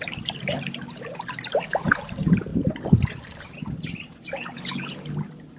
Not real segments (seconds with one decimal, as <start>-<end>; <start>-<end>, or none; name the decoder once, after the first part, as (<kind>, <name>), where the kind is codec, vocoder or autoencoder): 0.0-2.5 (vocoder, BigVGAN v2)